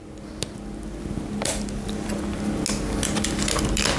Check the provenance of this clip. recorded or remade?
recorded